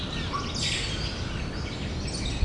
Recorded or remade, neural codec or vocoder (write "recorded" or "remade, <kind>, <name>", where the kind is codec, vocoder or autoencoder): recorded